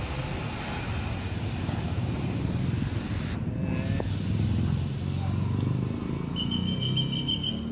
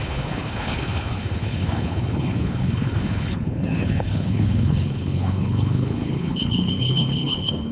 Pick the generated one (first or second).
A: second